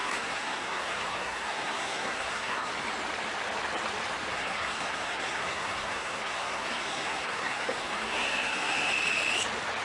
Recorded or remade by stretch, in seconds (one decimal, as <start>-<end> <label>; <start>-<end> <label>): 0.0-2.7 remade; 2.7-4.3 recorded; 4.3-8.9 remade; 8.9-9.8 recorded